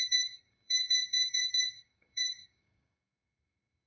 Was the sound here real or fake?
fake